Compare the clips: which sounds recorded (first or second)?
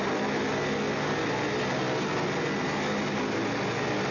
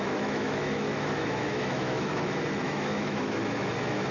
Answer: first